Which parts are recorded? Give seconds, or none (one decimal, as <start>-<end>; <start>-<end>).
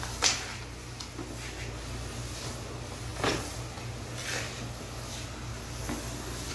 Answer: 0.0-6.5